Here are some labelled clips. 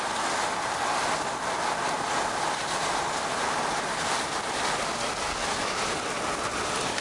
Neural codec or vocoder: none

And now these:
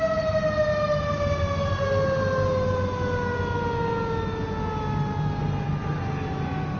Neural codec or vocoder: none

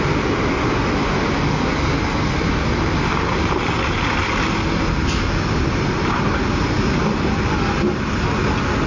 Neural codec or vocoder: none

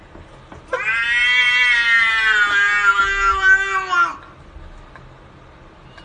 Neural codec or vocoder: none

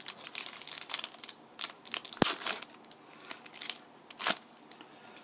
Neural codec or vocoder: none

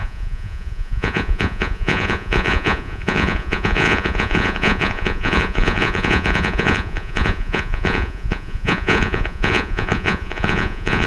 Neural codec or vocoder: vocoder, Vocos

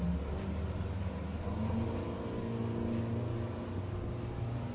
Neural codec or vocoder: none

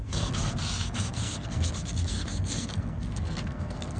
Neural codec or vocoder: codec, SNAC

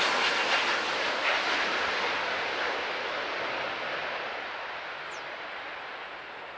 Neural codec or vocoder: none